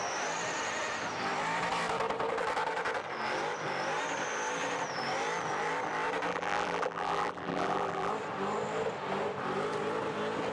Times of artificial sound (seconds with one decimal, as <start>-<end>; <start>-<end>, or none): 6.3-8.1